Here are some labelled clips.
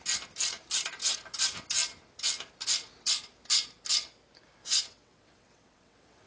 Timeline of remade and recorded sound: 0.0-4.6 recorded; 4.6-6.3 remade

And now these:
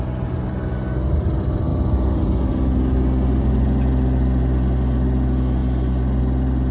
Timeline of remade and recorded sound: 0.0-6.7 recorded

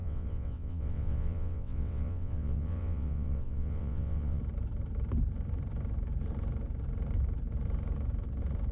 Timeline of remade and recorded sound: 0.0-4.4 remade; 4.4-8.7 recorded

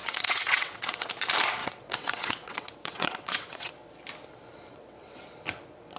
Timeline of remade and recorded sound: 0.0-1.1 remade; 1.1-1.6 recorded; 1.6-3.7 remade; 3.7-4.7 recorded; 4.7-5.2 remade; 5.2-6.0 recorded